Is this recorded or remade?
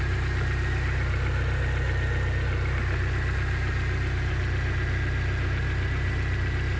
recorded